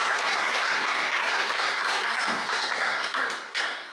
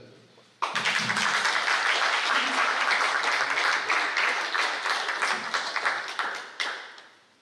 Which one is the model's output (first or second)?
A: first